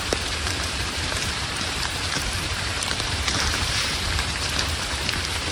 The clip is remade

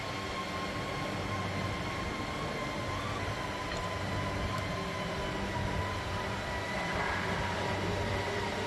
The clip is recorded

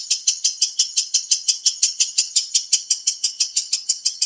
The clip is remade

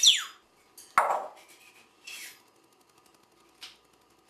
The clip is recorded